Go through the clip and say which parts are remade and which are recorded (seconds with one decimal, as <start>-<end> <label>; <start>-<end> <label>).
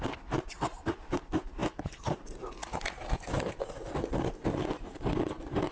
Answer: 0.0-5.7 recorded